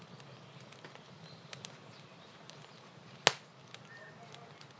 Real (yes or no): yes